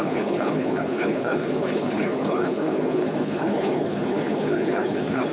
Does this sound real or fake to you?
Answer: fake